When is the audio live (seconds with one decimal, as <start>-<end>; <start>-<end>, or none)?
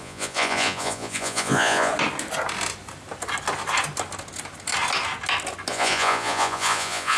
1.9-5.7